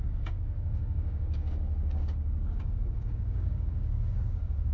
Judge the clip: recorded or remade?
remade